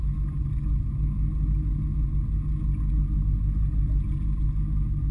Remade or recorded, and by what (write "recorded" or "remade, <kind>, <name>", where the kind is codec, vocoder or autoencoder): recorded